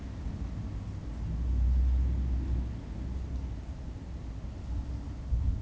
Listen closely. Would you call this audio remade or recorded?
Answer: recorded